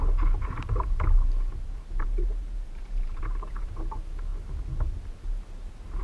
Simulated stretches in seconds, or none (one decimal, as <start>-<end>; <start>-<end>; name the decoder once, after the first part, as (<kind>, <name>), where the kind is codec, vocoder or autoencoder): 1.5-3.5 (vocoder, BigVGAN v2)